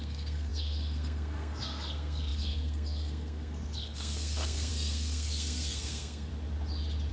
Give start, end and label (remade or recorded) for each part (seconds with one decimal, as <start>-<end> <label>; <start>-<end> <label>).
0.0-6.3 remade; 6.3-7.1 recorded